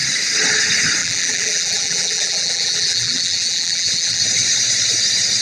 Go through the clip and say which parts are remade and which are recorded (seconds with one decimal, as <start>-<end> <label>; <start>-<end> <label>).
0.0-1.0 recorded; 1.0-4.2 remade; 4.2-5.4 recorded